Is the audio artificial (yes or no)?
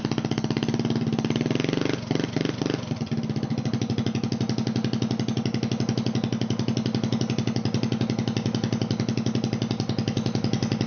no